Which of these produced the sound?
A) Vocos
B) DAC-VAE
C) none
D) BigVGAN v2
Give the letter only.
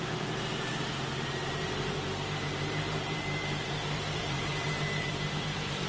D